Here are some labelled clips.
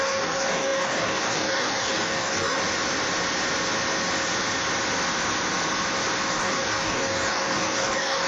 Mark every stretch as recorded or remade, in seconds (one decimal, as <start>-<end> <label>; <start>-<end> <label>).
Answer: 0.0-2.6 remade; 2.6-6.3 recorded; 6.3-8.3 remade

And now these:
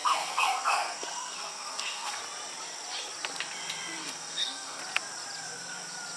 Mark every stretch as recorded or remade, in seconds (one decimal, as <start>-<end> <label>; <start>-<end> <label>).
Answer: 0.0-2.2 remade; 2.2-4.0 recorded; 4.0-4.8 remade; 4.8-6.2 recorded

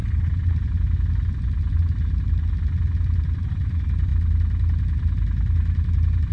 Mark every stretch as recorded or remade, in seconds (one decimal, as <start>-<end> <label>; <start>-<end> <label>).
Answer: 0.0-3.5 recorded; 3.5-4.1 remade; 4.1-6.3 recorded

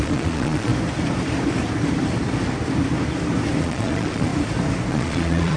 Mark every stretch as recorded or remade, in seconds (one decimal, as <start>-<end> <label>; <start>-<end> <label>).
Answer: 0.0-0.7 remade; 0.7-3.6 recorded; 3.6-4.3 remade; 4.3-4.9 recorded; 4.9-5.6 remade